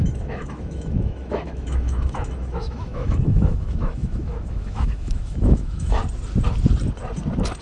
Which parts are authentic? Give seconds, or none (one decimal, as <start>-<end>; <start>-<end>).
6.0-7.6